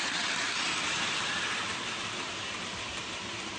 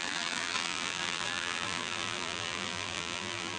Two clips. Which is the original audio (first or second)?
first